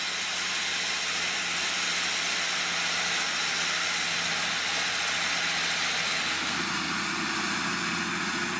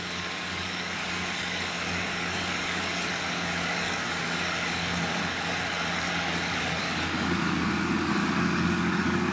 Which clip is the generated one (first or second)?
second